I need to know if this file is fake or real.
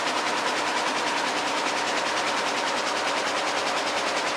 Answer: fake